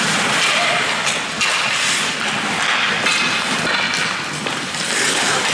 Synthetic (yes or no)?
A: no